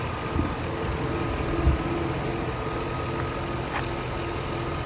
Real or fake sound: real